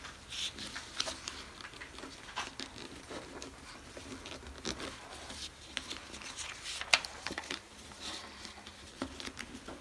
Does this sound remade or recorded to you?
recorded